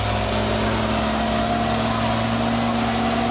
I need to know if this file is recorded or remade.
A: recorded